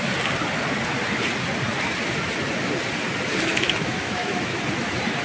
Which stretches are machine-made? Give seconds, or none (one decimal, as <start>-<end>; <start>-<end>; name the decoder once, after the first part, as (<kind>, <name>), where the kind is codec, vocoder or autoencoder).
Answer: 3.5-4.6 (autoencoder, DAC-VAE)